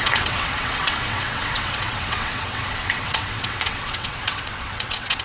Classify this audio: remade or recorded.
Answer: remade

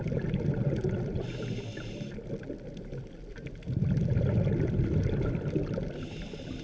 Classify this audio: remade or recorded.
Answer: recorded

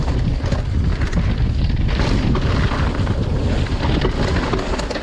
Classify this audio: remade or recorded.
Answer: recorded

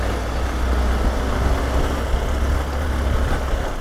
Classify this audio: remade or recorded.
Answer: recorded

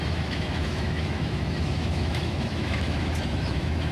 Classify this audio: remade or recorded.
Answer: remade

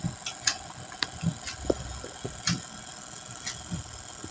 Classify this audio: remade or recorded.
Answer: recorded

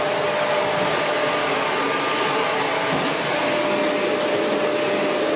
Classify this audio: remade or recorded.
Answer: recorded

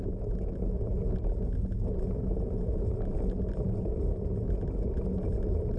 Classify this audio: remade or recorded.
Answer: recorded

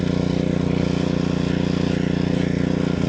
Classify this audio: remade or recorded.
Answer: recorded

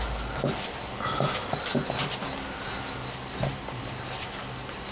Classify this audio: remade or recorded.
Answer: recorded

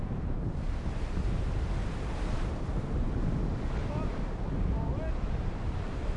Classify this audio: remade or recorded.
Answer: recorded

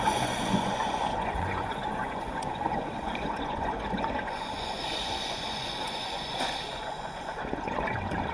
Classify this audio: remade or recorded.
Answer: remade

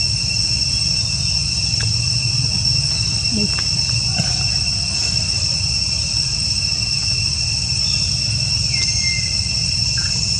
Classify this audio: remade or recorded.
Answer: recorded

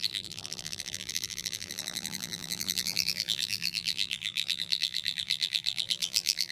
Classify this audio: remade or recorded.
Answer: remade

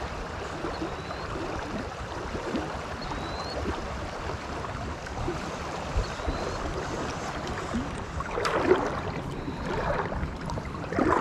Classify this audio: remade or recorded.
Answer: remade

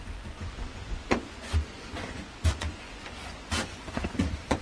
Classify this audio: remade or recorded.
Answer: remade